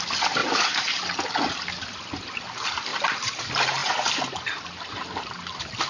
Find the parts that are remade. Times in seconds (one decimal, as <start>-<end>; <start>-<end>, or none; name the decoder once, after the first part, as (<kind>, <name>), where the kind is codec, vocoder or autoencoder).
0.4-1.0 (vocoder, BigVGAN v2); 2.9-3.4